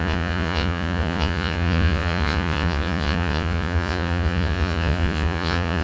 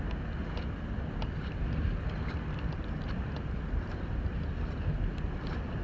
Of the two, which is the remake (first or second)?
first